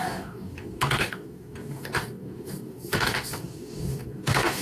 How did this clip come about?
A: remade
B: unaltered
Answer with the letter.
A